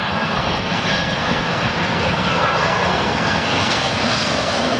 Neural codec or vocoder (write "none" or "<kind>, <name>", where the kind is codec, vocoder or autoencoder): codec, SNAC